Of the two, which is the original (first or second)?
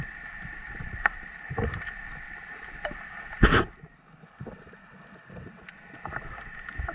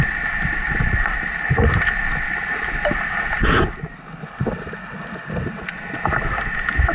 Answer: second